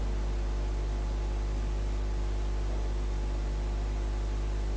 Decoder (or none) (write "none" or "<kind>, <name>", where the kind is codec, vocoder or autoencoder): none